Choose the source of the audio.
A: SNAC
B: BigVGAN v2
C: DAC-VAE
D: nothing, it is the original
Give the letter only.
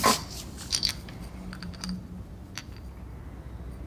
D